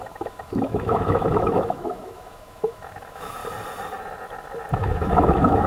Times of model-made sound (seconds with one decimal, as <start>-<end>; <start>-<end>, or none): 0.0-3.4; 4.7-5.7